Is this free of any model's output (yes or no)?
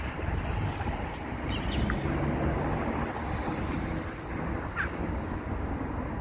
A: yes